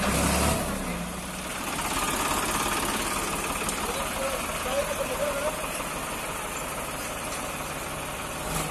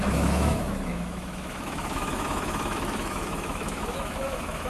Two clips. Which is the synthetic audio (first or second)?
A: second